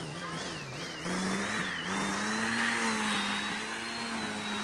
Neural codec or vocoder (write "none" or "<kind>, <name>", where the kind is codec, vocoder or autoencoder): none